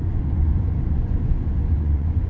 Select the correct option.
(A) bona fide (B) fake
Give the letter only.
B